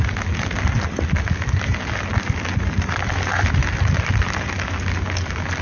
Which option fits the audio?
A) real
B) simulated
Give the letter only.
A